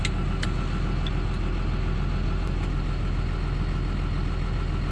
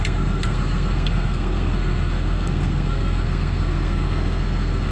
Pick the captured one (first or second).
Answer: first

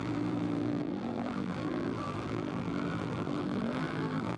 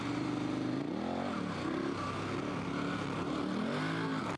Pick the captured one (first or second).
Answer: second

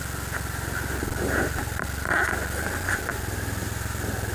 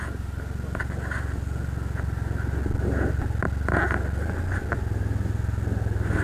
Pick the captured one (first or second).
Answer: second